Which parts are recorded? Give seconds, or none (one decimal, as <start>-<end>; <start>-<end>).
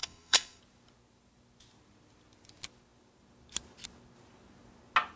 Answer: 0.6-5.2